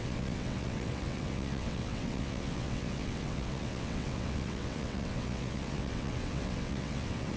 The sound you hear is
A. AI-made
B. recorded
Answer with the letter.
A